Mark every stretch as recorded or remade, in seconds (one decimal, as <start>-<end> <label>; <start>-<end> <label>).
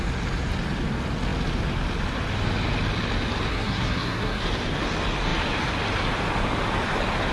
0.0-3.5 recorded; 3.5-4.4 remade; 4.4-7.3 recorded